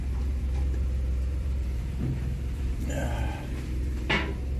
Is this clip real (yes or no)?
no